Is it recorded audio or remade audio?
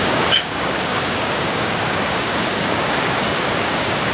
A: remade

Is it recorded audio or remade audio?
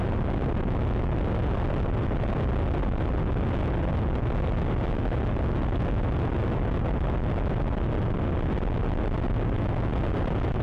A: recorded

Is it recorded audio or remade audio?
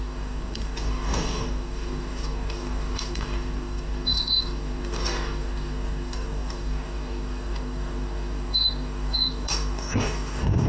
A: remade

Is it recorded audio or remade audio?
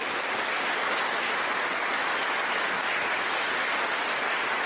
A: recorded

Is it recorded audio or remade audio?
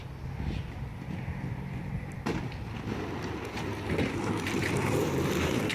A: recorded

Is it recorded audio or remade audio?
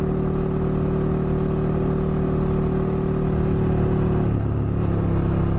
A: recorded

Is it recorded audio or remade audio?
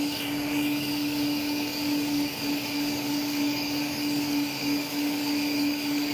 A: remade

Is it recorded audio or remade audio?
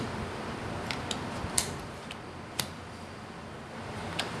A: recorded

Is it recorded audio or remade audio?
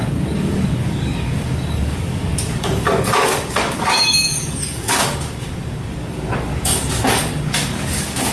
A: remade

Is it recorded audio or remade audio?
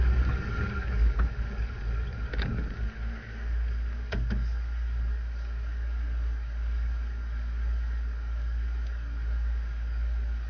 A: remade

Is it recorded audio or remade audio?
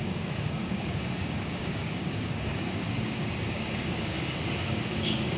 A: remade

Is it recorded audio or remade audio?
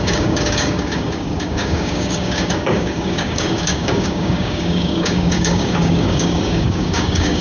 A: remade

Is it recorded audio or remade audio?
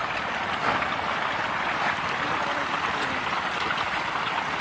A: recorded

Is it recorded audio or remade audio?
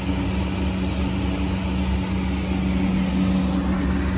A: recorded